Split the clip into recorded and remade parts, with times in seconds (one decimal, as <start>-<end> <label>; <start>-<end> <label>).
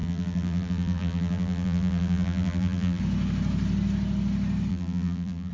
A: 0.0-3.0 remade; 3.0-4.7 recorded; 4.7-5.5 remade